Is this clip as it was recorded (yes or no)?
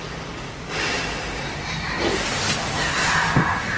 yes